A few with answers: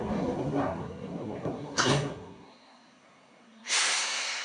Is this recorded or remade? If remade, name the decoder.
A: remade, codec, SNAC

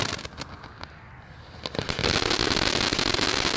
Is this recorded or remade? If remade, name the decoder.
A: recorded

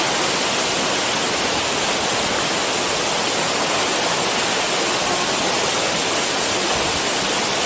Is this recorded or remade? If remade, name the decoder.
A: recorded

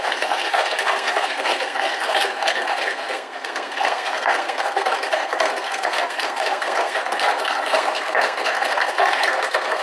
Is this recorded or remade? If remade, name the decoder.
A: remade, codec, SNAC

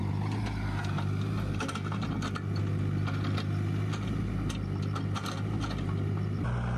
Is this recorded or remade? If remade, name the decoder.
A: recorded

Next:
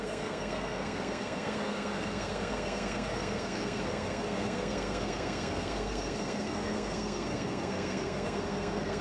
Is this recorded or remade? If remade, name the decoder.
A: remade, codec, SNAC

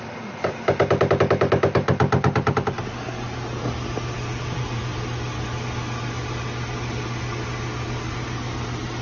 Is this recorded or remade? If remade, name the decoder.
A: recorded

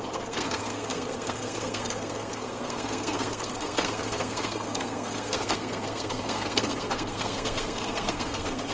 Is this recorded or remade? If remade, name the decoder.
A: remade, codec, SNAC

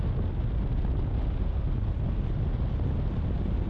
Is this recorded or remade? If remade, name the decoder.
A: recorded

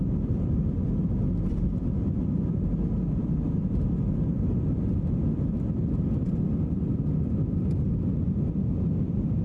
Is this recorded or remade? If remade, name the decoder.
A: recorded